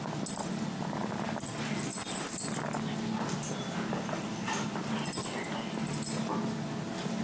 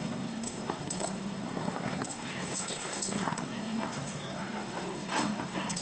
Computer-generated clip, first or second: second